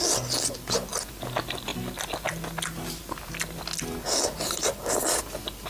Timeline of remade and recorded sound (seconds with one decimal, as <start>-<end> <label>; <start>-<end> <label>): 0.0-5.7 recorded